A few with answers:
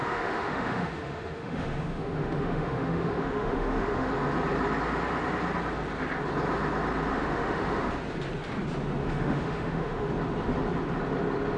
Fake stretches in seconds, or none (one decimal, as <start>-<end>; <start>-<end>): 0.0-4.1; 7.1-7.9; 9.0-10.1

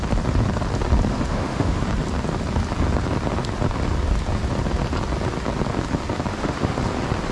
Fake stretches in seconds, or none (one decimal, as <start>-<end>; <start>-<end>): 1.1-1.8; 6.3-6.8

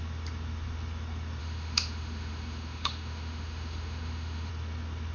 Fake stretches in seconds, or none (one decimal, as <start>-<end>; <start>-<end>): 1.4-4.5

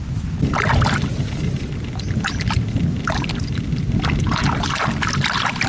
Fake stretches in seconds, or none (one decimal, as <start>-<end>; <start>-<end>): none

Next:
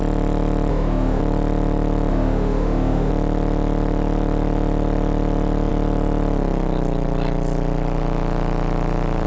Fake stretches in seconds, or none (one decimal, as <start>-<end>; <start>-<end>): 0.7-1.2; 2.1-3.1